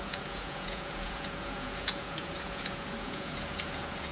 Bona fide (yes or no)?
no